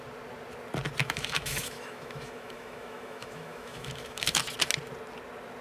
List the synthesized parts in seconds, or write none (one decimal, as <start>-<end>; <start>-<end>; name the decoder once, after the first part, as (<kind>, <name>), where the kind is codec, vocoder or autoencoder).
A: 1.0-4.4 (autoencoder, DAC-VAE)